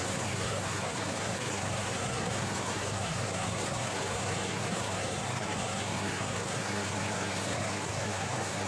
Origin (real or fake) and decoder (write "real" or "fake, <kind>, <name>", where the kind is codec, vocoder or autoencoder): fake, codec, SNAC